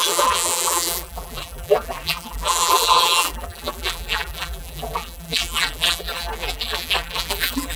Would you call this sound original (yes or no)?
no